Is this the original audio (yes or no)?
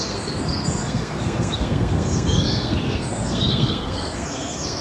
no